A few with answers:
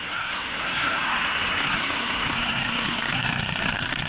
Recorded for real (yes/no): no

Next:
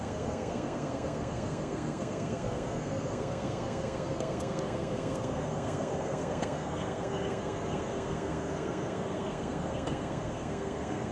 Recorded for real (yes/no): no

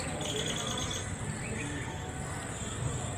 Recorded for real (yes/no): yes